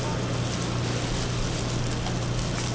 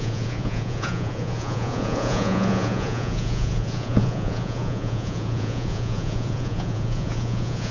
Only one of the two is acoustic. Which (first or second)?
first